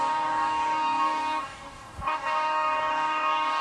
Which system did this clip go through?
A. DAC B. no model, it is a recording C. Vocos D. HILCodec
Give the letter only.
A